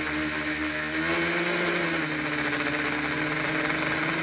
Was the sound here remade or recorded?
recorded